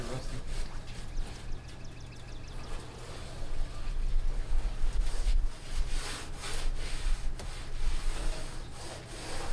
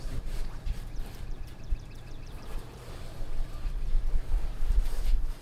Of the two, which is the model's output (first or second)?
second